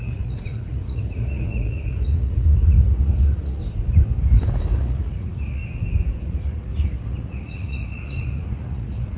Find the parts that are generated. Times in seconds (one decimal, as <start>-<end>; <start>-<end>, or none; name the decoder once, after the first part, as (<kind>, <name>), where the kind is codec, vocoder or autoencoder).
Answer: 0.0-3.6 (vocoder, Vocos); 4.8-5.6; 6.2-9.2